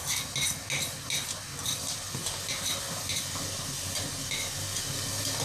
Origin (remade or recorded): recorded